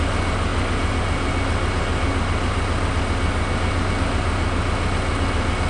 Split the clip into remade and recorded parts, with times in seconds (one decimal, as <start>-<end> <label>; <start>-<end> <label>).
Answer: 0.0-5.7 recorded